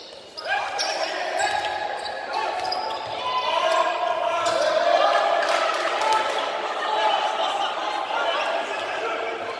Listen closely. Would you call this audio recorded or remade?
recorded